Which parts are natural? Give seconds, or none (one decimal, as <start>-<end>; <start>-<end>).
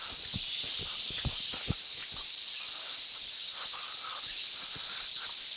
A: 0.0-5.6